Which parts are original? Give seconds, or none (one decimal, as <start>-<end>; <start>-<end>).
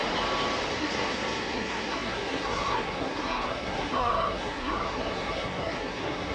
0.0-0.7